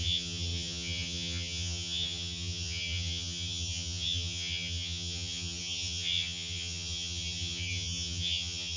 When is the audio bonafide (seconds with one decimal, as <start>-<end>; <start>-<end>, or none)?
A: none